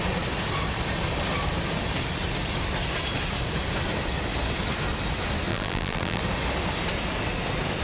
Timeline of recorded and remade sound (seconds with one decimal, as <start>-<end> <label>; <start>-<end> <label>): 0.0-5.5 recorded; 5.5-6.2 remade; 6.2-7.8 recorded